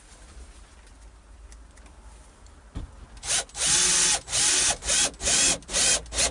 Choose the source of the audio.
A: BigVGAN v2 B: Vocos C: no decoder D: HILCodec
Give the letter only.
C